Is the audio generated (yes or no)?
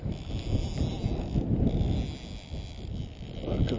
no